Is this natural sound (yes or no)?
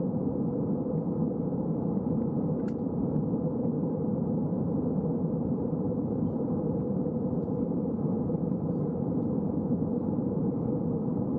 no